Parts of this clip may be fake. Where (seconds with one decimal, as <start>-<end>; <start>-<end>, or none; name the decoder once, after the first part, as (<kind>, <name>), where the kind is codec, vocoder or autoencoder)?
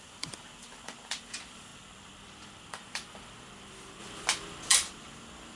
0.0-4.0 (vocoder, BigVGAN v2); 4.7-5.6